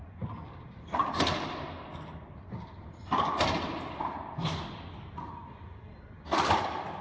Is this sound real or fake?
real